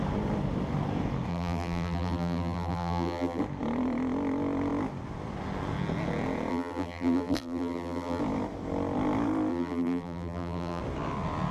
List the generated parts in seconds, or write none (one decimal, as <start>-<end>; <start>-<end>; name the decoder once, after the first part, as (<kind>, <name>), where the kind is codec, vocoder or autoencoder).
1.3-3.4 (vocoder, BigVGAN v2); 6.5-8.2; 9.5-10.8